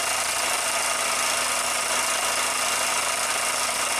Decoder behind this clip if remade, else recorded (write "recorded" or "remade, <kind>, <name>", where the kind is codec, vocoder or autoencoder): recorded